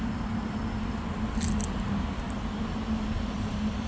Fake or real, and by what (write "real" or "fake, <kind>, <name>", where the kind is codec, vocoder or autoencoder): real